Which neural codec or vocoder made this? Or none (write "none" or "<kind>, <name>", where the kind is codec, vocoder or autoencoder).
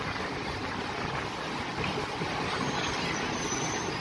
none